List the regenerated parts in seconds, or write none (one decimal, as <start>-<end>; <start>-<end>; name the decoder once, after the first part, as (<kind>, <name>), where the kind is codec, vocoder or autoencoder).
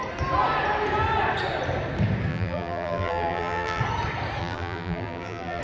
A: 2.3-3.8 (vocoder, BigVGAN v2); 4.4-5.6